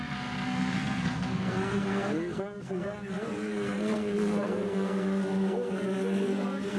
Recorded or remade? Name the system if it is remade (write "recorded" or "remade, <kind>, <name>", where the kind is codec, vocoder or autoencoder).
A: remade, codec, SNAC